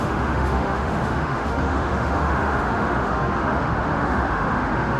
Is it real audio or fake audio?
fake